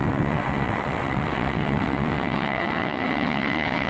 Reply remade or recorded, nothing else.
remade